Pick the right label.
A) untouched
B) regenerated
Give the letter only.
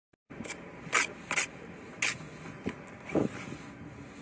A